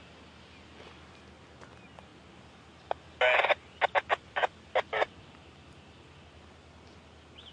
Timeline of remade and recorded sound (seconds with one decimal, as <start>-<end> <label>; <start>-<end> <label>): 0.0-7.5 recorded